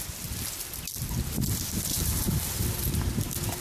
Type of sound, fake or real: real